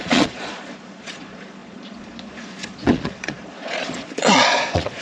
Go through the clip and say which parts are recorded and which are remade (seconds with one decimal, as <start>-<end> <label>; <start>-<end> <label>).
0.0-5.0 remade